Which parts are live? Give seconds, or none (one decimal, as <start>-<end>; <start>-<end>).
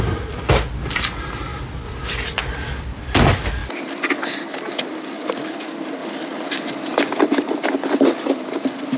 0.0-9.0